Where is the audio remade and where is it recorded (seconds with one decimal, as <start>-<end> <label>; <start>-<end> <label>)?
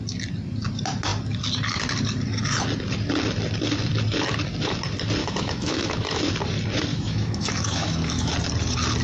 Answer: 0.0-5.2 recorded; 5.2-6.3 remade; 6.3-6.9 recorded; 6.9-8.3 remade; 8.3-9.0 recorded